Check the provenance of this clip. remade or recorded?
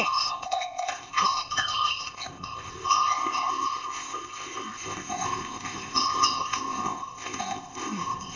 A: remade